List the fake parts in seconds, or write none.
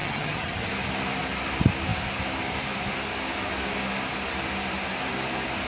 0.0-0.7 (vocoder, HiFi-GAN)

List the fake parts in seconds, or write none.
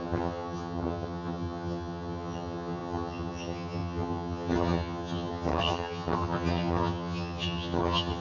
0.0-8.2 (vocoder, HiFi-GAN)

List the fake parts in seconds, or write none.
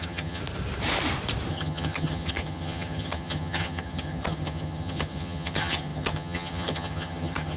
0.0-0.4 (vocoder, HiFi-GAN); 1.5-7.6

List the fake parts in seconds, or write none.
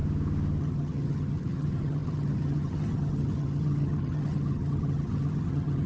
0.6-5.9 (vocoder, HiFi-GAN)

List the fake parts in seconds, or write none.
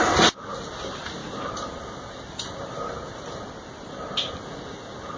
none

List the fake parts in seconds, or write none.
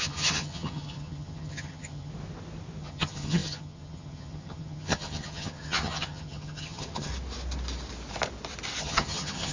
0.0-2.1 (vocoder, HiFi-GAN); 2.8-7.1; 8.8-9.5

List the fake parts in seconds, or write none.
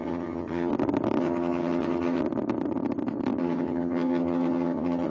0.0-0.7 (vocoder, HiFi-GAN); 1.2-2.2; 3.4-5.1